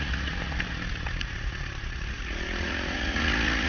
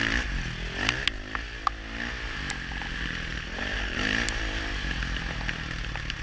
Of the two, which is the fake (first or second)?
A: first